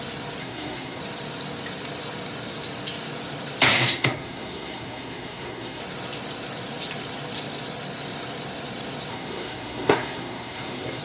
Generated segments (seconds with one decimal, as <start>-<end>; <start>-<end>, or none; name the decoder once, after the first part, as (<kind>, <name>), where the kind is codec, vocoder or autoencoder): 0.4-1.0 (codec, SNAC); 3.7-5.8; 9.1-11.0